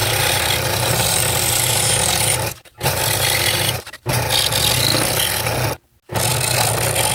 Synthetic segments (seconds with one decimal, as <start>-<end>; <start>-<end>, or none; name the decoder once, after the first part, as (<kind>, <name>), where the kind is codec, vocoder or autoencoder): 0.0-4.3 (vocoder, BigVGAN v2)